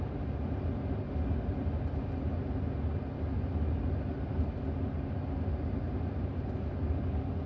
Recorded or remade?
recorded